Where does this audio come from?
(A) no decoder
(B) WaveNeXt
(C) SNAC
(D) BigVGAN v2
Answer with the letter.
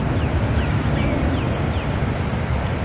A